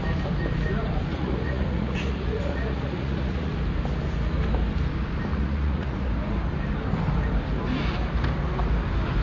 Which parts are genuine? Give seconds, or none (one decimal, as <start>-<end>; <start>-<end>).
0.0-1.1; 3.5-5.3; 6.1-9.2